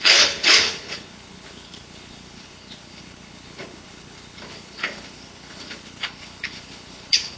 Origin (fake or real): fake